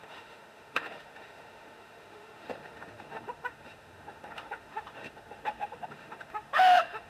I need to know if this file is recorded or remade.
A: remade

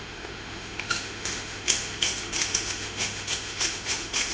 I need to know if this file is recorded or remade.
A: remade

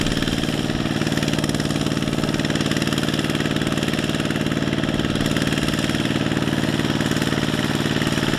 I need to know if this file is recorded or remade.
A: recorded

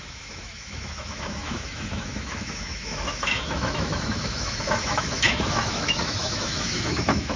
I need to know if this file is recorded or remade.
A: remade